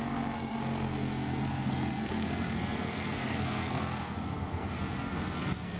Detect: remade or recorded remade